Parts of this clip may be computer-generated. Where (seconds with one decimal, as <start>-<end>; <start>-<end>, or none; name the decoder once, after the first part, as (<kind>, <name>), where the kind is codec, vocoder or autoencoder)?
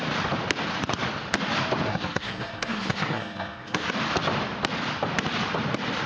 1.9-3.9 (codec, SNAC)